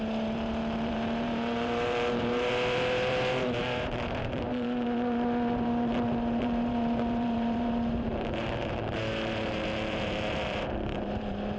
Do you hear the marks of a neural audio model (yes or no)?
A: yes